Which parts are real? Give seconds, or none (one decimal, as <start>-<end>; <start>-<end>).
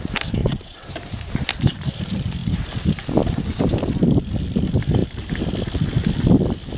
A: 0.0-0.4; 0.9-6.8